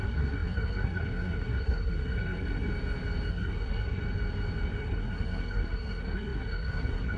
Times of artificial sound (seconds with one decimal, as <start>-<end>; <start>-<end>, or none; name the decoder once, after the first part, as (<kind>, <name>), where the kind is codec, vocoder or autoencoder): 0.0-2.7 (codec, SNAC); 3.3-4.0; 4.8-7.2